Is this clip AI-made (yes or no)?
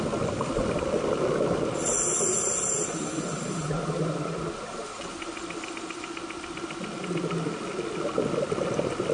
no